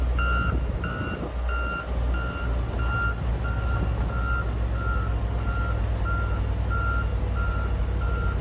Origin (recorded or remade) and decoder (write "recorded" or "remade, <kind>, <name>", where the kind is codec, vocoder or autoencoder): recorded